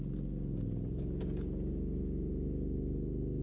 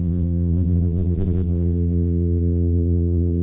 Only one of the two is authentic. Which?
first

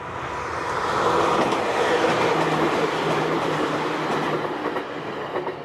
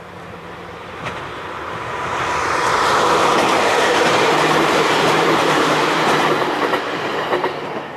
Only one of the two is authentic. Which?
first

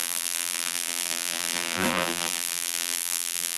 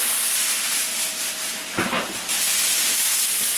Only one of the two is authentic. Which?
second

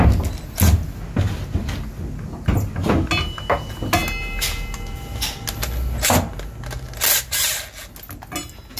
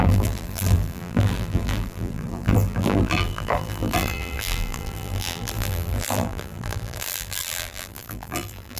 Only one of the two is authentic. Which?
first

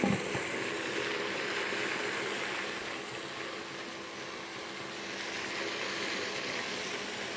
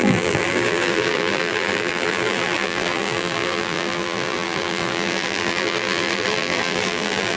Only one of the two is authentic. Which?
first